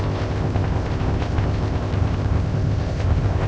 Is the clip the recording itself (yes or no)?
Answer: no